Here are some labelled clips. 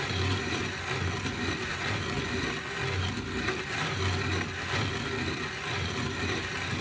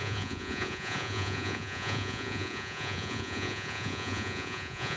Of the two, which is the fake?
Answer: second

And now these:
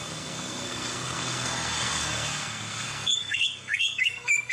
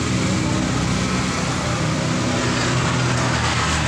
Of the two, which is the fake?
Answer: first